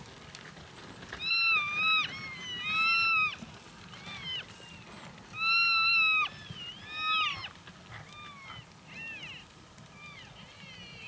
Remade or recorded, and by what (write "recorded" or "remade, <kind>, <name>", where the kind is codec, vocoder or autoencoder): recorded